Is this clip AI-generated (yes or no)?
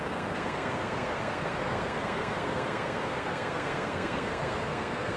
yes